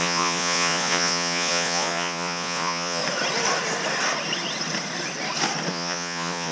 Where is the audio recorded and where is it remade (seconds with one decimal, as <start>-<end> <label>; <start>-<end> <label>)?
0.0-3.0 remade; 3.0-5.7 recorded; 5.7-6.5 remade